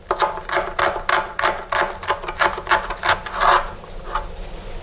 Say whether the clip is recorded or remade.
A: recorded